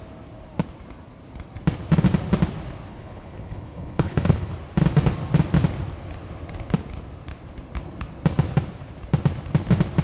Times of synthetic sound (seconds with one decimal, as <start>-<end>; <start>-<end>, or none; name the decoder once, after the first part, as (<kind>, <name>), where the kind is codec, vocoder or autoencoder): 2.9-4.5 (codec, HILCodec)